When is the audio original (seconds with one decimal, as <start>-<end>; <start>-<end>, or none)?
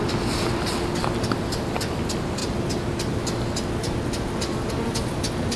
0.0-5.6